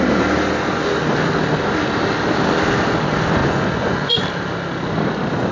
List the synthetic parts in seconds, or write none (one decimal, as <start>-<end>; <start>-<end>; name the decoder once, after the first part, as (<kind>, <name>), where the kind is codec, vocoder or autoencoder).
3.4-4.2 (vocoder, Vocos)